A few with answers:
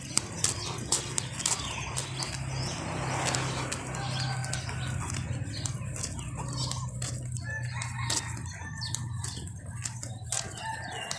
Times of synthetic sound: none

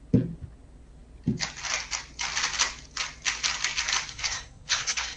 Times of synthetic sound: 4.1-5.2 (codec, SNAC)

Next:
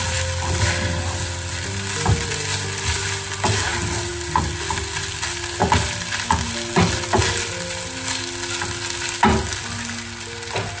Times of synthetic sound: none

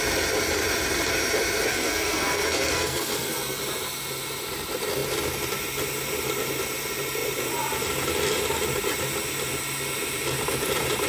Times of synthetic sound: 1.7-3.6 (codec, SNAC)

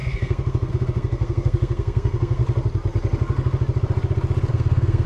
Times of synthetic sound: 0.0-2.4 (codec, SNAC); 4.5-5.1

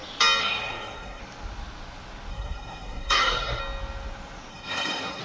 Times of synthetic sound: 0.4-1.2 (codec, SNAC); 2.3-3.6; 4.5-5.2